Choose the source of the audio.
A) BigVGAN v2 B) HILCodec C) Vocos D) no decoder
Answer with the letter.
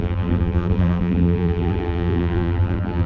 A